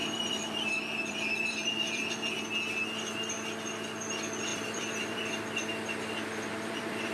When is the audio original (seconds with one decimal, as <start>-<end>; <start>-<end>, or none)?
2.3-4.5; 5.3-6.5